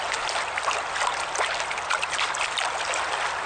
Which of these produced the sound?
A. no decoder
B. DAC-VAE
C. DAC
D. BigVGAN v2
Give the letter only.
D